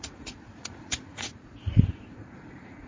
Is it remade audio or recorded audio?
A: remade